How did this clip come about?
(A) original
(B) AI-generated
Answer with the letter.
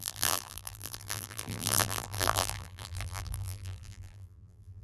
B